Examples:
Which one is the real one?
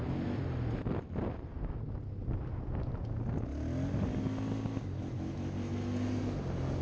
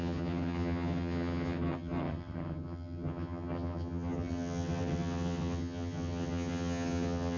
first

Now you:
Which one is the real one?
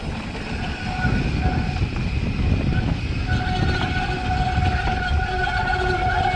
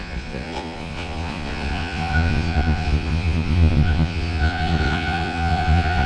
first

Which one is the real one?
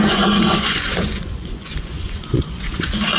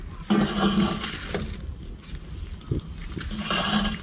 second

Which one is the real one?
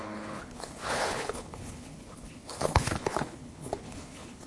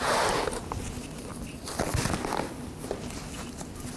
second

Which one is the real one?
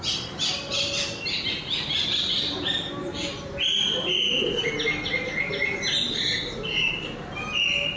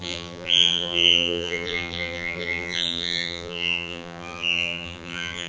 first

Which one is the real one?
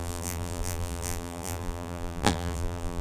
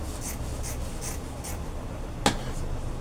second